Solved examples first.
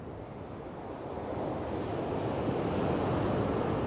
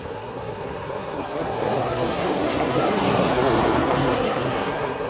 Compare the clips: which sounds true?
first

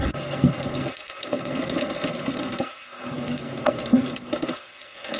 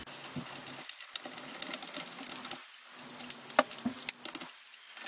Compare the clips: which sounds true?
second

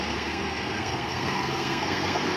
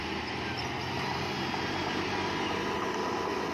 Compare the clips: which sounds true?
second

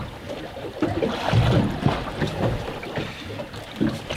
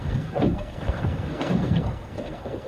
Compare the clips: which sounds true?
first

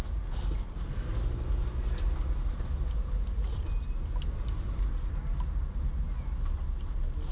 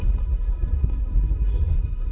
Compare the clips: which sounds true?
first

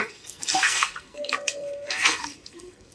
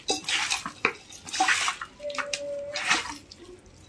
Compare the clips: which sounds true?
second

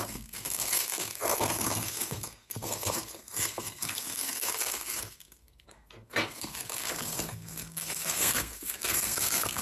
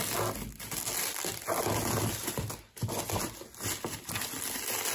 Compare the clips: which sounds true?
second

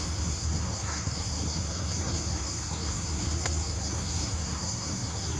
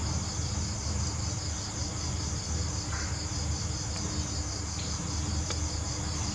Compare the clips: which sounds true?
second